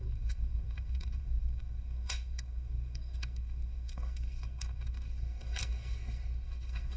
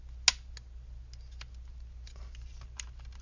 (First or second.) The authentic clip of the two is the second